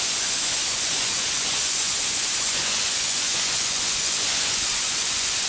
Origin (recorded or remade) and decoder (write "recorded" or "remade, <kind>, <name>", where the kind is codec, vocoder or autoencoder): remade, vocoder, Vocos